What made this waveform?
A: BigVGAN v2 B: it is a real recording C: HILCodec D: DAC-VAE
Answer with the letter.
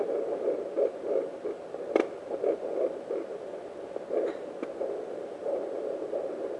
B